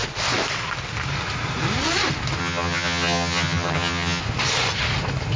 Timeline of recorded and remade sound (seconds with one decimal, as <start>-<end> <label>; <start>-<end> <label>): 0.0-2.4 recorded; 2.4-4.2 remade; 4.2-5.4 recorded